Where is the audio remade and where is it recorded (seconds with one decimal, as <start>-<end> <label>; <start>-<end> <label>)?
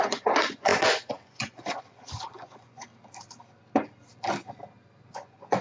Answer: 0.0-2.9 remade; 2.9-5.1 recorded; 5.1-5.6 remade